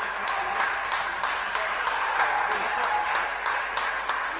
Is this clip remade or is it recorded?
recorded